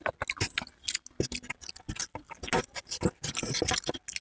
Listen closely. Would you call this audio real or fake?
real